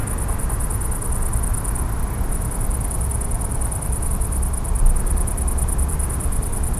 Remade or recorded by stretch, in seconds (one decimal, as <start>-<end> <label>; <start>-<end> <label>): 0.0-6.8 recorded